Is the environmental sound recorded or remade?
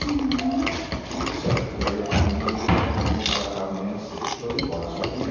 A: recorded